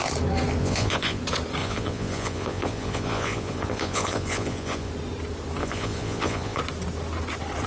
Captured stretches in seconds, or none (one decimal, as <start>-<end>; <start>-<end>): 0.0-0.6; 1.2-1.6; 4.9-5.6; 6.6-7.7